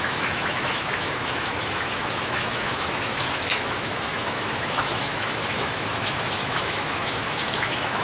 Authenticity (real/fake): fake